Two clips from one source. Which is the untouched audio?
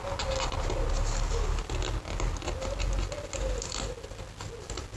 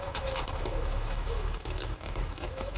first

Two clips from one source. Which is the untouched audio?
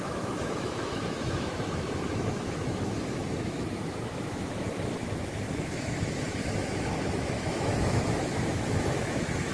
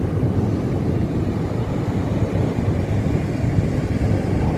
second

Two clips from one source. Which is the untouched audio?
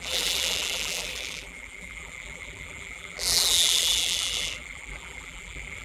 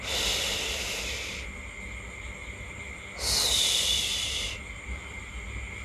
second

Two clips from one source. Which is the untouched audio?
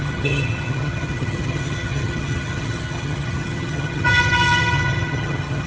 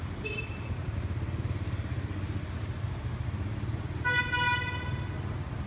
second